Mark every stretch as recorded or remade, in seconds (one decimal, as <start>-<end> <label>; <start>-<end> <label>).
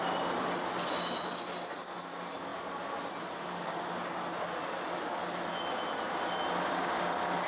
0.0-7.5 recorded